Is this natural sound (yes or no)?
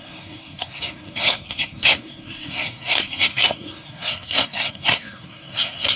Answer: no